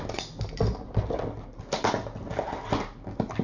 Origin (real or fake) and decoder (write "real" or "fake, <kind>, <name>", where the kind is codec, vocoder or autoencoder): real